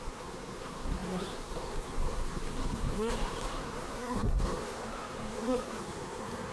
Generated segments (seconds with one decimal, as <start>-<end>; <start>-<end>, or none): 0.0-6.5